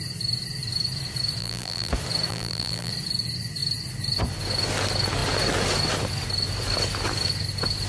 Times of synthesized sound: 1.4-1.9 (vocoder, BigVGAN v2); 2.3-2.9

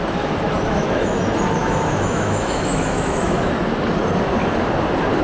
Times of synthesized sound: 0.7-1.2 (autoencoder, DAC-VAE); 1.6-3.5

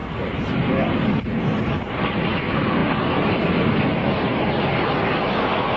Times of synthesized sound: none

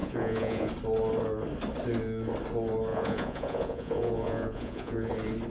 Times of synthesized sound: 0.0-0.7 (vocoder, Vocos); 2.9-5.1

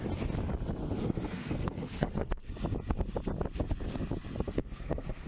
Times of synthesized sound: 0.8-2.5 (codec, SNAC); 4.6-5.3